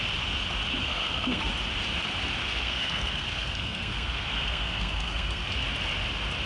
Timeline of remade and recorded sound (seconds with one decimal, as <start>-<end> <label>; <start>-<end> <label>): 0.0-0.8 recorded; 0.8-1.5 remade; 1.5-2.4 recorded; 2.4-5.5 remade; 5.5-6.5 recorded